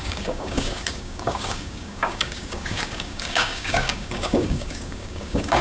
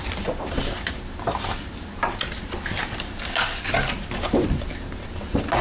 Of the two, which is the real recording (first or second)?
second